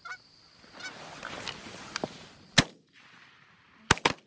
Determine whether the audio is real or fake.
real